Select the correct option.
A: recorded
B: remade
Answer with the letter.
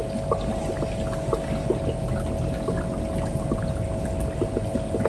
A